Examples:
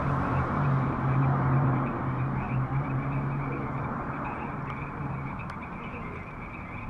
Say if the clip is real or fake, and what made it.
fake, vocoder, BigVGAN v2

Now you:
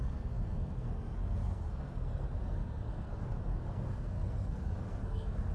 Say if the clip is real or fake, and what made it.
fake, codec, SNAC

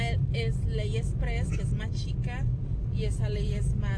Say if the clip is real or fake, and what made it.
real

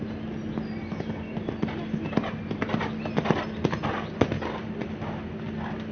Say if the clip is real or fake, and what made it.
real